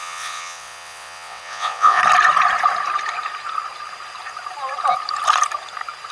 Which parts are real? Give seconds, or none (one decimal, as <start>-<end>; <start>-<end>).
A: 2.0-6.1